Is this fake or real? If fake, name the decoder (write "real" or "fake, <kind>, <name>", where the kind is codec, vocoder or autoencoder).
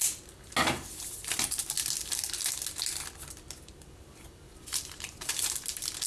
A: real